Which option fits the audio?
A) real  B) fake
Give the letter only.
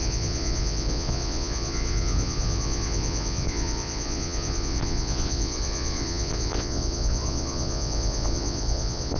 B